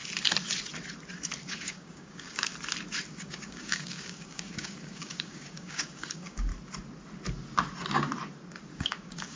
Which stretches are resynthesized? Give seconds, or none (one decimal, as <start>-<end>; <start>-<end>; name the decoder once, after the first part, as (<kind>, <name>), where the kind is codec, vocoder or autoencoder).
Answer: 1.5-2.5 (codec, DAC); 3.1-6.5; 8.8-9.4